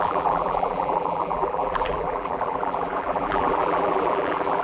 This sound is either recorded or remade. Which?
remade